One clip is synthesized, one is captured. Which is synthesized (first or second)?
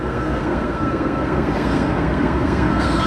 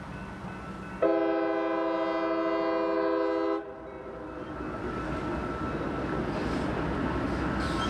first